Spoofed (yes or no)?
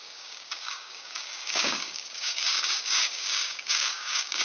yes